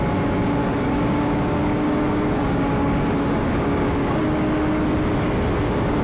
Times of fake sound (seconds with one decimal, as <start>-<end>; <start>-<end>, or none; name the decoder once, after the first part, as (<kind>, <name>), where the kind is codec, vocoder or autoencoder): 0.6-4.2 (codec, DAC)